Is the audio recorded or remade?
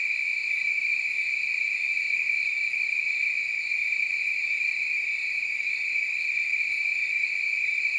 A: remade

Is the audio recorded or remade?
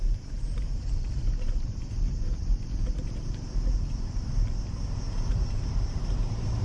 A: remade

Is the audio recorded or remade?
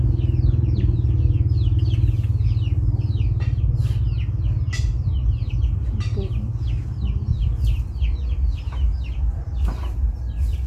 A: recorded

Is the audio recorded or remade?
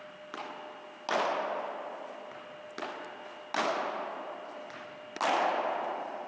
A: recorded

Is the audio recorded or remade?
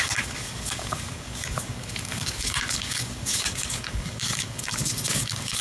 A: remade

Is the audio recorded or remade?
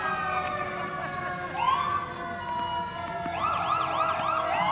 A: recorded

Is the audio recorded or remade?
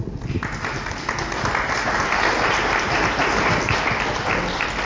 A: recorded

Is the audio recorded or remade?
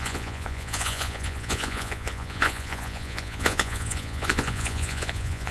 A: remade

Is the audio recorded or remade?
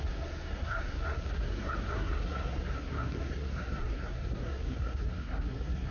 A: remade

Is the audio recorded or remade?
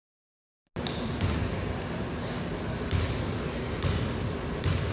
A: recorded